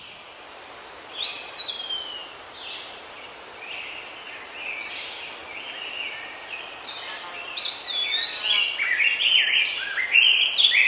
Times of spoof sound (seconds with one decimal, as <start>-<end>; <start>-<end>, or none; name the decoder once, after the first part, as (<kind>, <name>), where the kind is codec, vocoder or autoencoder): none